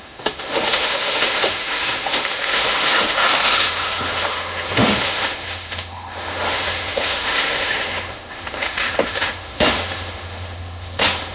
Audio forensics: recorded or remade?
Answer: remade